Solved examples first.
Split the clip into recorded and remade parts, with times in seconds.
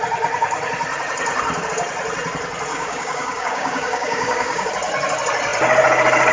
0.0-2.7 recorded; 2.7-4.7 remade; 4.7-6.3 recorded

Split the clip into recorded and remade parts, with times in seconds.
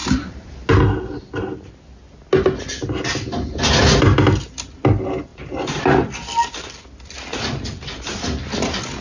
0.0-0.7 remade; 0.7-5.3 recorded; 5.3-5.8 remade; 5.8-9.0 recorded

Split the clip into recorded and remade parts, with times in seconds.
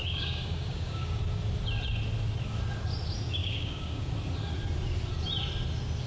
0.0-1.2 remade; 1.2-3.4 recorded; 3.4-4.1 remade; 4.1-6.1 recorded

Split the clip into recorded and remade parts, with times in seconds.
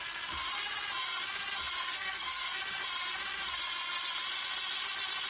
0.0-1.9 recorded; 1.9-2.6 remade; 2.6-5.3 recorded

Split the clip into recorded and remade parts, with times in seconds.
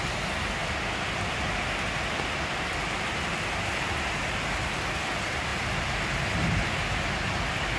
0.0-7.8 recorded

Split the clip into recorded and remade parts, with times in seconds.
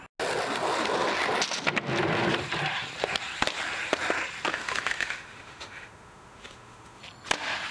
0.0-4.5 recorded; 4.5-7.0 remade; 7.0-7.7 recorded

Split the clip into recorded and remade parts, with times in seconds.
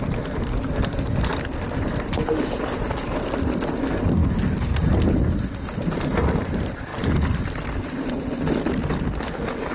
0.0-1.3 recorded; 1.3-2.1 remade; 2.1-9.7 recorded